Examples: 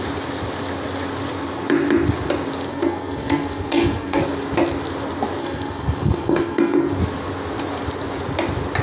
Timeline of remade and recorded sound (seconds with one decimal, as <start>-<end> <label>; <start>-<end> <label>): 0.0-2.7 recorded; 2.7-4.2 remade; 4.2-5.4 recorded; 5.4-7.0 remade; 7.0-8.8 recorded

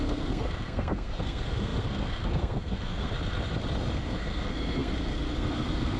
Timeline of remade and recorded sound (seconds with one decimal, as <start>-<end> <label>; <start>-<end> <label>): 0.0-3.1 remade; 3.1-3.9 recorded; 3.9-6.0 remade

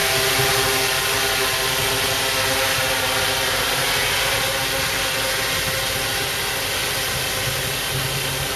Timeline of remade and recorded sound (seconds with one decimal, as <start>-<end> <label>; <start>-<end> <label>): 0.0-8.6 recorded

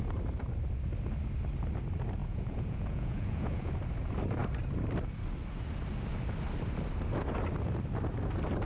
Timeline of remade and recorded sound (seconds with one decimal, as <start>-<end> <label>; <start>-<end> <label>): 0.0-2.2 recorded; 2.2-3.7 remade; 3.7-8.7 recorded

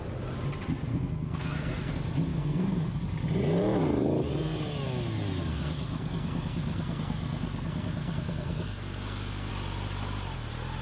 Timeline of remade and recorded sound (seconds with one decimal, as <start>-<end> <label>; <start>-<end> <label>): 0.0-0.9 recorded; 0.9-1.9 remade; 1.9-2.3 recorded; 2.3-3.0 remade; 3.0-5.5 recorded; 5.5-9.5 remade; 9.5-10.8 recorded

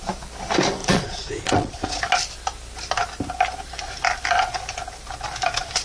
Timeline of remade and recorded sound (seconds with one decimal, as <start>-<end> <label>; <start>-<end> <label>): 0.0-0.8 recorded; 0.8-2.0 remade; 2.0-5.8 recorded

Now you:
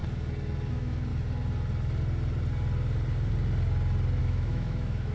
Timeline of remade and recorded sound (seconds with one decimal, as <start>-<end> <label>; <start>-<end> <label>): 0.0-0.7 recorded; 0.7-1.1 remade; 1.1-4.2 recorded; 4.2-5.1 remade